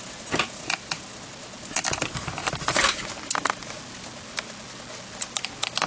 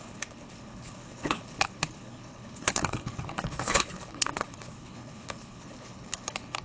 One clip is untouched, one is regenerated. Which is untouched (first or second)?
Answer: first